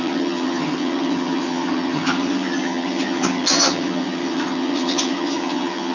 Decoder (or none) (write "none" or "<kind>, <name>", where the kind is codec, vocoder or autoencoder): vocoder, HiFi-GAN